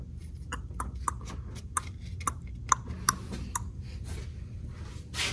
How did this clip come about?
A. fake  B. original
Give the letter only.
B